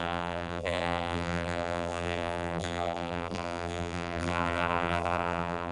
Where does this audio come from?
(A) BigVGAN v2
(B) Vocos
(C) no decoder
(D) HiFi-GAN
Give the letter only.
A